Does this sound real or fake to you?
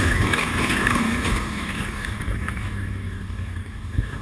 fake